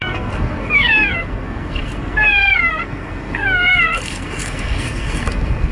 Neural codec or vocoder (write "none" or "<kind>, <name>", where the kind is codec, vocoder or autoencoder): codec, SNAC